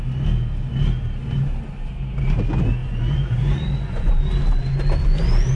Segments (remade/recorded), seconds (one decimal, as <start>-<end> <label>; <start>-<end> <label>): 0.0-2.8 recorded; 2.8-4.2 remade; 4.2-5.6 recorded